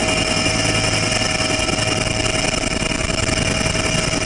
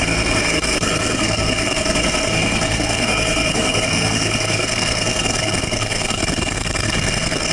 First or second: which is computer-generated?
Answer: second